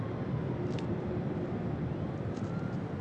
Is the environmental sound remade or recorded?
remade